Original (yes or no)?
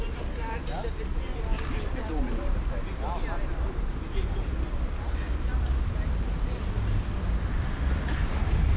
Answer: no